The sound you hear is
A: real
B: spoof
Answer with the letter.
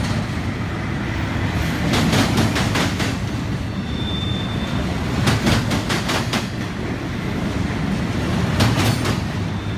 A